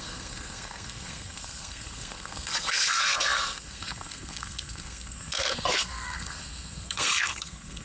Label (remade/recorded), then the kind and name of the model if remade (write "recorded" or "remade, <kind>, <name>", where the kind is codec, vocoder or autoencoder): remade, codec, SNAC